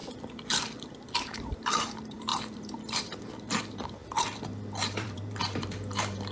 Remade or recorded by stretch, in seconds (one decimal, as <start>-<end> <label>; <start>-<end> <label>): 0.0-1.1 recorded; 1.1-6.3 remade